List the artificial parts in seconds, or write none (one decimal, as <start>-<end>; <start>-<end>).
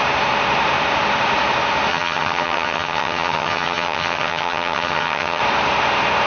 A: 1.9-5.4